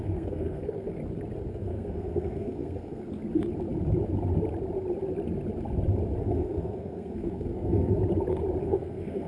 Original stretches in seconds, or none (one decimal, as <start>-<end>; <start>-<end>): 1.0-1.5; 3.0-6.2; 8.0-8.6